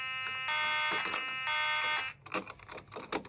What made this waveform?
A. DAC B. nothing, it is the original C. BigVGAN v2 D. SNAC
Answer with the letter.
B